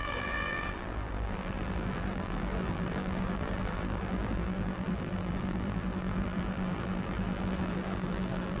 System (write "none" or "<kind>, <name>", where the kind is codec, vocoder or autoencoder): vocoder, BigVGAN v2